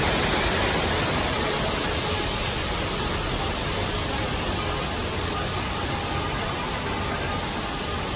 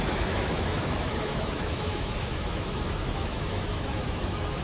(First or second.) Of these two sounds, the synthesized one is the second